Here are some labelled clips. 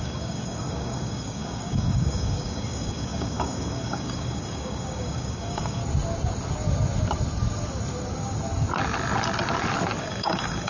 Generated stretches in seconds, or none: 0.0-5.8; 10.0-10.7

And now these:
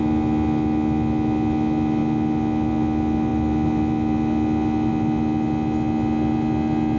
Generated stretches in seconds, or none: none

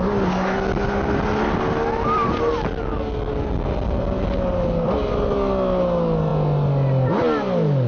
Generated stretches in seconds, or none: none

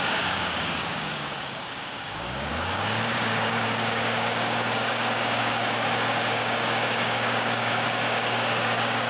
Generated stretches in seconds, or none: 0.0-9.1